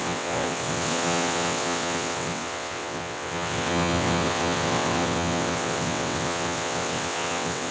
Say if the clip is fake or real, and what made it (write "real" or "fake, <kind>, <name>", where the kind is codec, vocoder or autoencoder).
fake, vocoder, WaveNeXt